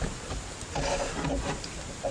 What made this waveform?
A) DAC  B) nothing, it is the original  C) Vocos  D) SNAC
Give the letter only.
B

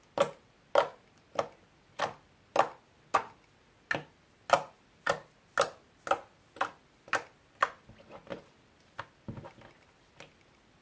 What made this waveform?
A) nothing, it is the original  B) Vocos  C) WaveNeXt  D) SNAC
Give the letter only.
A